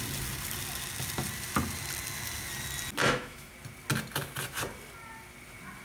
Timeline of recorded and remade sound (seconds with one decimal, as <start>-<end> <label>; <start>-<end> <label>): 0.0-3.0 recorded; 3.0-3.5 remade; 3.5-5.8 recorded